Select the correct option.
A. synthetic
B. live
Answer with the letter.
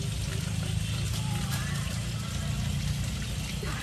B